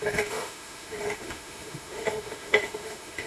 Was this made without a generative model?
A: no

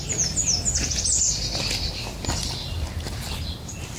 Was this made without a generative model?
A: yes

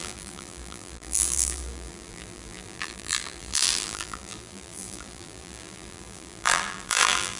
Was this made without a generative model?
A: no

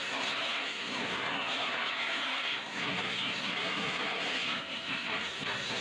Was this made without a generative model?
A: no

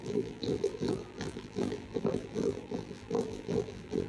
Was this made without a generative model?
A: no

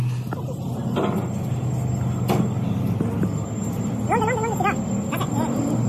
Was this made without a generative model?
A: yes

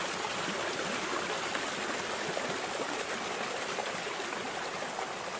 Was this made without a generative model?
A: yes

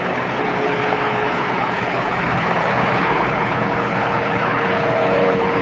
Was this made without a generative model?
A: no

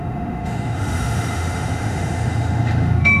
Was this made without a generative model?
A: no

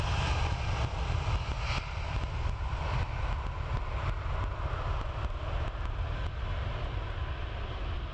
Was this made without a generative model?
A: yes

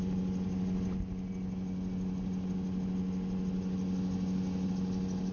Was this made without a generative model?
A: yes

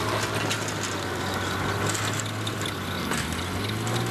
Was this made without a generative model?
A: yes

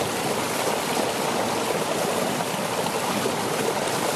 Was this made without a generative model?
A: yes